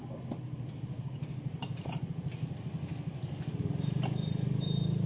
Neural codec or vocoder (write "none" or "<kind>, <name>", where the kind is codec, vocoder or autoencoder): none